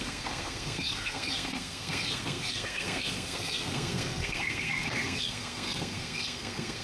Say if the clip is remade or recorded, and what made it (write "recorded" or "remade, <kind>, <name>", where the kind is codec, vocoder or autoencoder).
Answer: remade, codec, SNAC